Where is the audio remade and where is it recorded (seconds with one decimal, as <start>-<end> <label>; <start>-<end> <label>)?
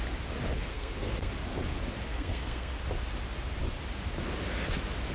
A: 0.0-0.7 recorded; 0.7-1.3 remade; 1.3-2.1 recorded; 2.1-2.8 remade; 2.8-5.1 recorded